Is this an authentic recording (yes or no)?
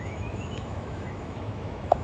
no